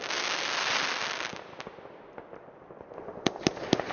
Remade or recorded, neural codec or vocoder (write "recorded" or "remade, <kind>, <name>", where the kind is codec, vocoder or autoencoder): recorded